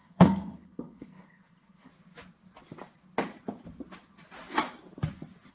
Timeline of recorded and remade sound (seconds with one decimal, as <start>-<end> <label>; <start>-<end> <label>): 0.0-1.9 remade; 1.9-5.5 recorded